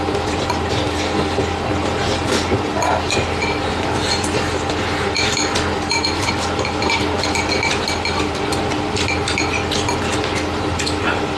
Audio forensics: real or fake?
real